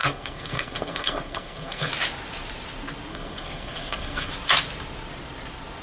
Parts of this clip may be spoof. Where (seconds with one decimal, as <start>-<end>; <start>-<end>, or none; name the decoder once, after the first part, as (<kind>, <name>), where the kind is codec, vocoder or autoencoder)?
0.0-1.9 (codec, SNAC); 3.1-4.3